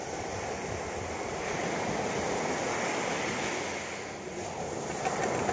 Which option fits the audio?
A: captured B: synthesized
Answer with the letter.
A